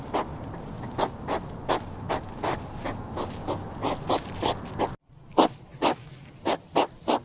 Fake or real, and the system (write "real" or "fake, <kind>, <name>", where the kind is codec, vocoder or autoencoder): real